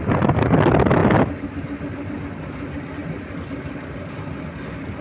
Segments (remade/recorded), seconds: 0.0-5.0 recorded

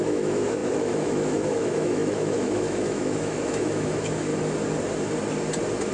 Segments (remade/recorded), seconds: 0.0-4.3 remade; 4.3-5.9 recorded

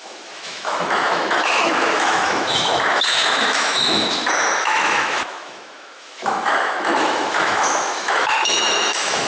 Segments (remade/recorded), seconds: 0.0-9.3 remade

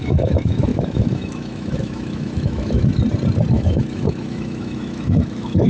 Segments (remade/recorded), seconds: 0.0-2.9 remade; 2.9-3.5 recorded; 3.5-5.7 remade

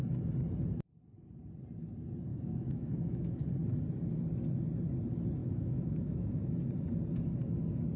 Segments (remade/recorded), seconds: 0.0-2.3 recorded; 2.3-3.4 remade; 3.4-5.4 recorded; 5.4-6.5 remade; 6.5-8.0 recorded